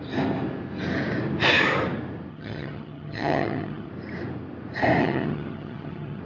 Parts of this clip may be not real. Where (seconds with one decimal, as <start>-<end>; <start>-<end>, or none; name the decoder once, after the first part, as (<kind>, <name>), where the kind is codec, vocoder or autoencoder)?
2.3-3.9 (vocoder, HiFi-GAN); 5.0-6.2